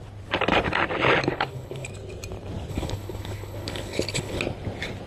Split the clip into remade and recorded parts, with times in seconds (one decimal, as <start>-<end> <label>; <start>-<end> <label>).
0.0-1.3 recorded; 1.3-1.9 remade; 1.9-2.7 recorded; 2.7-4.4 remade; 4.4-5.1 recorded